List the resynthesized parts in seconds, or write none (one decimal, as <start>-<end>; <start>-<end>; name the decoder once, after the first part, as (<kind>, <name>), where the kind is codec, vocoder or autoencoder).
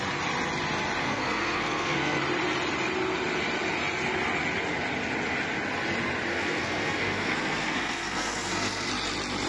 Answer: 1.0-2.2 (codec, SNAC); 6.3-8.9